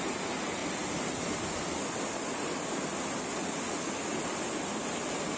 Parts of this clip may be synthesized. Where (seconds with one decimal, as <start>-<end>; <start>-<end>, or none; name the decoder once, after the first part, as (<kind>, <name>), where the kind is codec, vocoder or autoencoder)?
none